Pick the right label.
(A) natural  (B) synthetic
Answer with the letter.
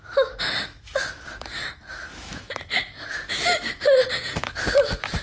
B